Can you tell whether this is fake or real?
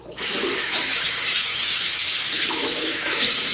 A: fake